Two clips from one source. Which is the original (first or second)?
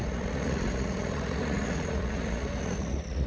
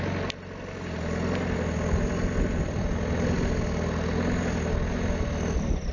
second